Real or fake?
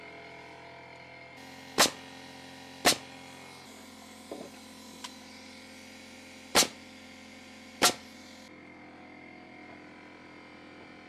real